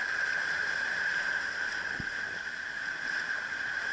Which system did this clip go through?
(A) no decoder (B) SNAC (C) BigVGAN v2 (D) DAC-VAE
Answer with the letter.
C